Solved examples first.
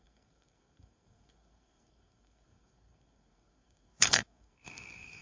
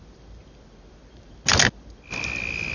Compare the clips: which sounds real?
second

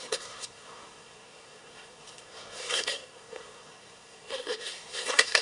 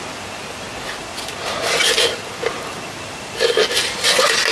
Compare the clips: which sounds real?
second